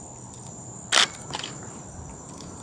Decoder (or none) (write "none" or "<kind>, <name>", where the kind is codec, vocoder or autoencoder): none